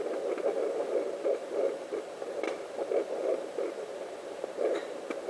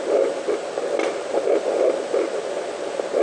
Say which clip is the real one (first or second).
second